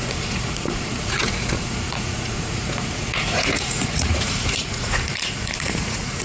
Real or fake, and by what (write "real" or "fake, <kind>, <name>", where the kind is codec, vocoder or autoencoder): fake, vocoder, Vocos